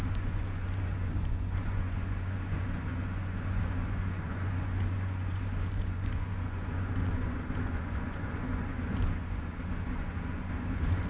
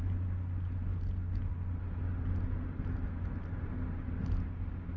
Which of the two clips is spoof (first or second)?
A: first